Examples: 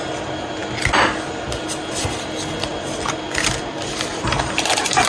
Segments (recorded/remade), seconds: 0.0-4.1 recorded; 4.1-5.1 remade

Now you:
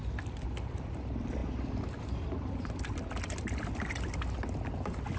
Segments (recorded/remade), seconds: 0.0-5.2 recorded

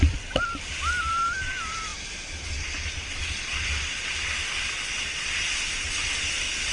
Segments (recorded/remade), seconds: 0.0-1.9 remade; 1.9-5.9 recorded; 5.9-6.7 remade

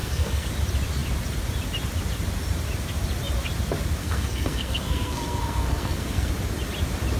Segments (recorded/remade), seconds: 0.0-0.5 remade; 0.5-4.0 recorded; 4.0-6.3 remade; 6.3-7.2 recorded

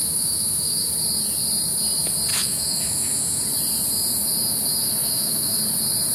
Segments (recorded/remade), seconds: 0.0-0.9 remade; 0.9-2.3 recorded; 2.3-3.4 remade; 3.4-5.0 recorded; 5.0-5.6 remade; 5.6-6.1 recorded